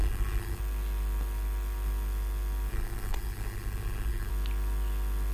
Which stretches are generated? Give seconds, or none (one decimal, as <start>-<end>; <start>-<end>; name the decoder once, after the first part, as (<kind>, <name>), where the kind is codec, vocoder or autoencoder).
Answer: 0.0-0.6 (codec, SNAC); 2.7-4.3

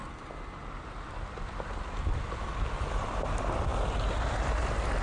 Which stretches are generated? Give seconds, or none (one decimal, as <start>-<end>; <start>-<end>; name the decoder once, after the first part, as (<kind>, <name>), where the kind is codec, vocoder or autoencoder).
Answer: none

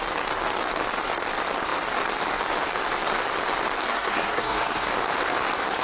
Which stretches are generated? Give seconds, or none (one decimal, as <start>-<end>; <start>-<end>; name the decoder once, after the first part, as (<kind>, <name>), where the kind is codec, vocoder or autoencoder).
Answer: 3.9-4.9 (codec, SNAC)

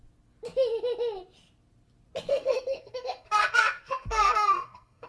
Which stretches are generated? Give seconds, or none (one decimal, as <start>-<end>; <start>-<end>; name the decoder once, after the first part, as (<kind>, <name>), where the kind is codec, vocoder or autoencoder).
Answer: 2.3-5.1 (codec, SNAC)

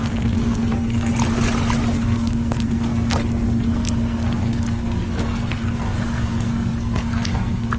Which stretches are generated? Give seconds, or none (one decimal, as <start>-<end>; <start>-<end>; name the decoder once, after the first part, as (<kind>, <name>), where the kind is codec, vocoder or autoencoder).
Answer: 0.0-1.1 (codec, SNAC); 1.9-7.8

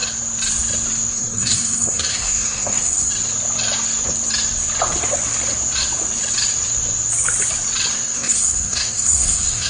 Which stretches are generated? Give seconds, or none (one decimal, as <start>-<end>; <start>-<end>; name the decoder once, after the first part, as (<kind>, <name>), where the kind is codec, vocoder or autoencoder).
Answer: 1.1-3.1 (codec, SNAC); 7.9-9.7

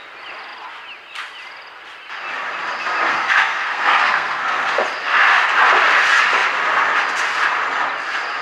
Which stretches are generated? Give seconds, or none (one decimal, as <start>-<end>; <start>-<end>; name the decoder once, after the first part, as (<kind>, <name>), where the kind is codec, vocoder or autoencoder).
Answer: 3.1-4.7 (codec, SNAC)

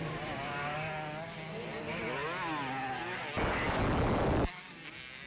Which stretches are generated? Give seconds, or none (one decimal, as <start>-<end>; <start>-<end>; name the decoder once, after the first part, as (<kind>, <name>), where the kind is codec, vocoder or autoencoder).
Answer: none